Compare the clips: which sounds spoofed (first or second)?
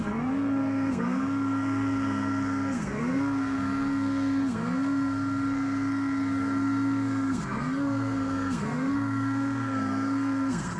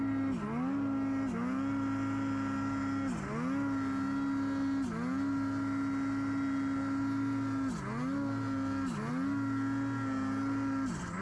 first